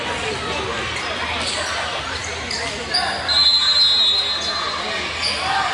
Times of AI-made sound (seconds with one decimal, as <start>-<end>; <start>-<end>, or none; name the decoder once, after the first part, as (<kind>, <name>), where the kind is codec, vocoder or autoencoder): none